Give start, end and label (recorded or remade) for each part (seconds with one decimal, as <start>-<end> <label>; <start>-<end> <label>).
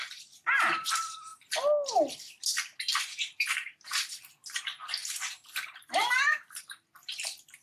0.0-0.7 recorded; 0.7-1.3 remade; 1.3-3.0 recorded; 3.0-7.6 remade